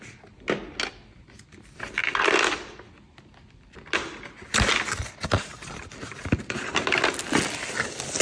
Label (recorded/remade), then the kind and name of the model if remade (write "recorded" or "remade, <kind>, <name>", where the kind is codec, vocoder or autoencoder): recorded